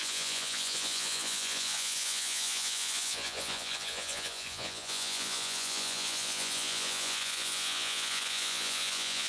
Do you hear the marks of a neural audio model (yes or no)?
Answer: yes